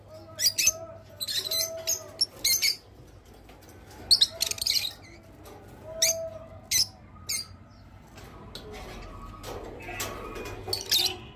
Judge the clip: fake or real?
real